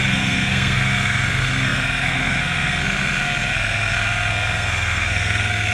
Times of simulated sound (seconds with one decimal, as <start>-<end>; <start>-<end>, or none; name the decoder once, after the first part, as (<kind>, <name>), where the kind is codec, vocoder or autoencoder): 0.0-5.7 (codec, SNAC)